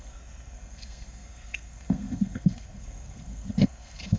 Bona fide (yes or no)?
no